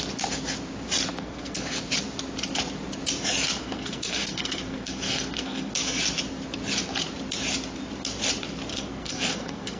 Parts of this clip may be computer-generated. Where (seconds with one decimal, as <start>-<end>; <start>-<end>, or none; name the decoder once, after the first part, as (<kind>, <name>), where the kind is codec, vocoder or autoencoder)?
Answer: 1.1-1.8 (codec, SNAC); 3.6-5.7; 8.7-9.8